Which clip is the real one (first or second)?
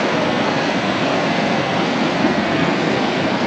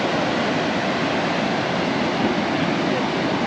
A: second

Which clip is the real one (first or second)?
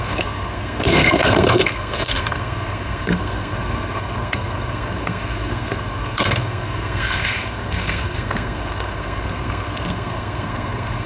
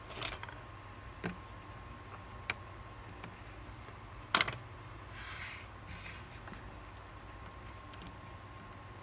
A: second